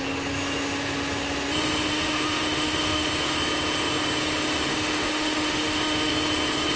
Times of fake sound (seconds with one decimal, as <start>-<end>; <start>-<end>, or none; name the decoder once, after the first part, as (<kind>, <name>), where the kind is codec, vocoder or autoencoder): 1.9-3.1 (autoencoder, DAC-VAE); 4.7-6.1